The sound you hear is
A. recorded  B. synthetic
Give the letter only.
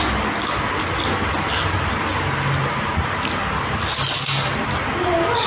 A